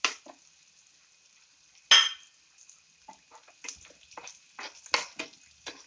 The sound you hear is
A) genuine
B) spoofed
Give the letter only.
A